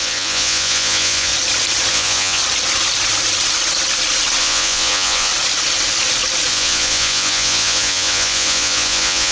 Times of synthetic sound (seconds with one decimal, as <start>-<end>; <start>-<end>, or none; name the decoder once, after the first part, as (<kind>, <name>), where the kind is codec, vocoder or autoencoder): 0.0-1.3 (vocoder, Vocos); 1.9-2.4; 4.4-5.3; 6.5-9.3